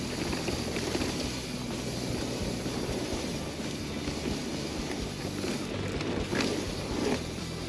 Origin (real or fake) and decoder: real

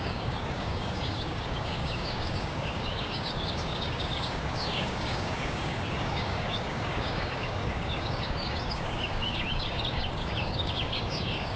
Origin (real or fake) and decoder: fake, codec, DAC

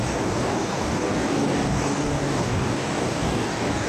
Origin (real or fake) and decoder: fake, codec, DAC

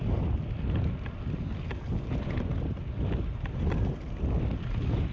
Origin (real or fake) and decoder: real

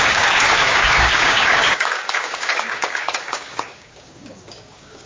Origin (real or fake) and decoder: fake, codec, DAC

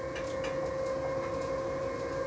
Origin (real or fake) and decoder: real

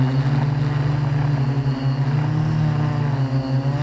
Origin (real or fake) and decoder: real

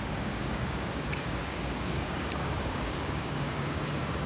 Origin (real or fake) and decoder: fake, codec, DAC